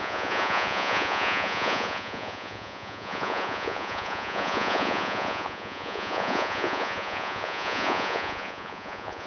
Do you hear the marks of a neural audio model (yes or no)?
yes